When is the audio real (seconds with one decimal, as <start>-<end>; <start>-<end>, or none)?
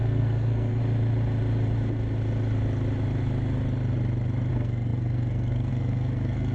0.8-4.5